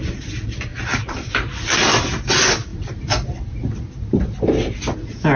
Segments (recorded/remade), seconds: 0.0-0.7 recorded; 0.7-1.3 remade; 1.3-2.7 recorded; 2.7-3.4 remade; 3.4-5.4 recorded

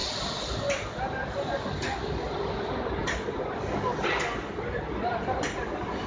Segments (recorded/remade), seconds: 0.0-6.1 recorded